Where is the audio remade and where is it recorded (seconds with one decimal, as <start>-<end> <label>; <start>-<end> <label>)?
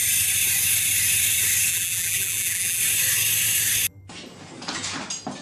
0.0-1.7 recorded; 1.7-2.8 remade; 2.8-5.4 recorded